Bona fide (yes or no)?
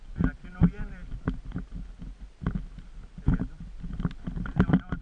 yes